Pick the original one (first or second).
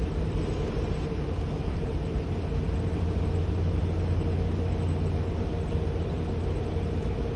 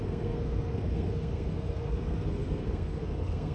first